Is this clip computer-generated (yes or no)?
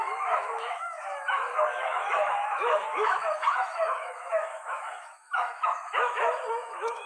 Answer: yes